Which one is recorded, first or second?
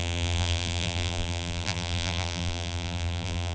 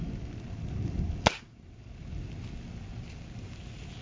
second